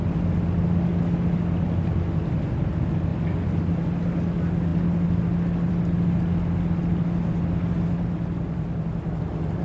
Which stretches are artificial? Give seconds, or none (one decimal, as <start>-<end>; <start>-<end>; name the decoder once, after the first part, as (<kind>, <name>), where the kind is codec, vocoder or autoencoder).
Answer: none